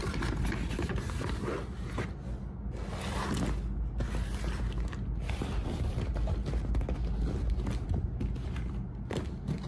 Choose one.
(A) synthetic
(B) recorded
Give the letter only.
B